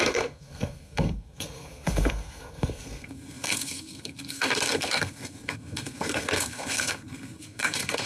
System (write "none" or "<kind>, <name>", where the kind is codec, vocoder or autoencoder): codec, SNAC